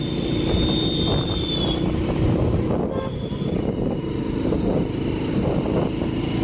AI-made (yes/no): no